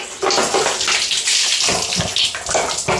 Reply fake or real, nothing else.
real